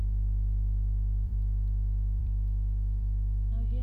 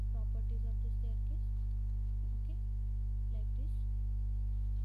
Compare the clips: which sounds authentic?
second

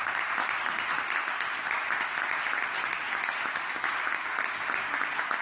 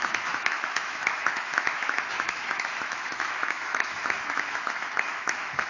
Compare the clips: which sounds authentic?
first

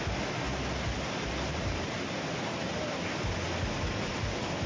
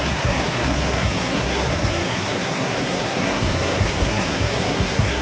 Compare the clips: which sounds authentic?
first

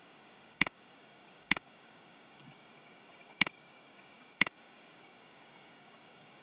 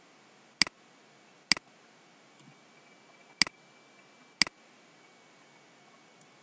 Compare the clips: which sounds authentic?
second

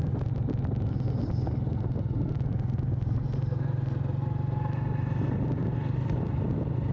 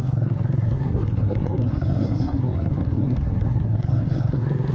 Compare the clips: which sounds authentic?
first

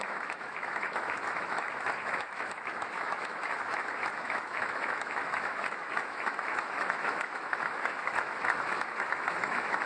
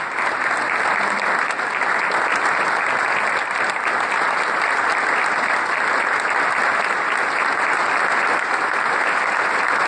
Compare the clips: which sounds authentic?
second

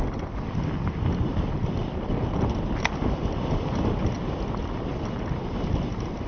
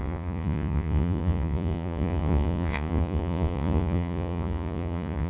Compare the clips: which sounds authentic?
first